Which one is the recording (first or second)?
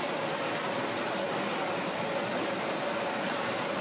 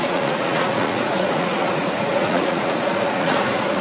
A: first